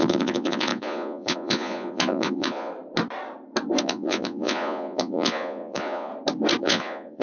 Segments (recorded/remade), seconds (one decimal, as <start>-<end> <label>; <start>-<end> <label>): 0.0-2.7 remade; 2.7-3.8 recorded; 3.8-6.1 remade; 6.1-6.6 recorded; 6.6-7.2 remade

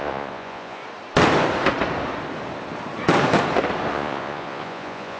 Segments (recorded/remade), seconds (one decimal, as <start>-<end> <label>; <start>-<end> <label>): 0.0-0.8 remade; 0.8-3.9 recorded; 3.9-5.2 remade

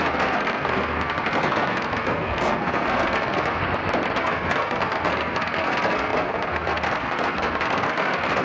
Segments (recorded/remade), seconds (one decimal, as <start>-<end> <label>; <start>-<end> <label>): 0.0-3.6 remade; 3.6-4.2 recorded; 4.2-8.4 remade

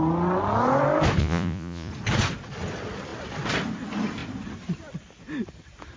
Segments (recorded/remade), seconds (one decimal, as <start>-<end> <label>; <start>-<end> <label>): 0.0-1.2 recorded; 1.2-1.9 remade; 1.9-6.0 recorded

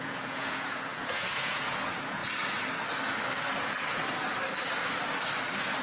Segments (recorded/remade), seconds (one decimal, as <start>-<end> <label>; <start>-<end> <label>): 0.0-2.2 remade; 2.2-5.8 recorded